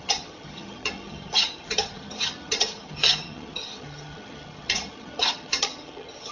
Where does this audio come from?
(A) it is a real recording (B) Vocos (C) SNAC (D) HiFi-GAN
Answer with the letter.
D